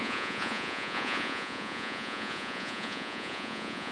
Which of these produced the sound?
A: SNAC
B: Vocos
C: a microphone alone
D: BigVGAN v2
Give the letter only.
B